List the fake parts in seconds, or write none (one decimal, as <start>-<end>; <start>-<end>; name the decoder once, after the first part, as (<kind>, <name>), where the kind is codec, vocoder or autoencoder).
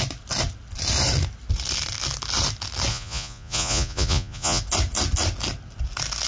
2.9-4.6 (vocoder, Vocos)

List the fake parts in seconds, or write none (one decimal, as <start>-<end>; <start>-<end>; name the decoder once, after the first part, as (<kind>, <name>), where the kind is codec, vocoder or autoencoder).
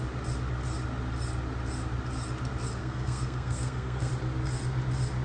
2.8-4.1 (codec, SNAC)